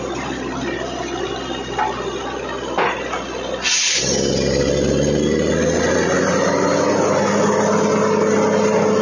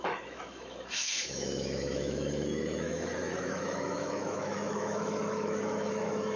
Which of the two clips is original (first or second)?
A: first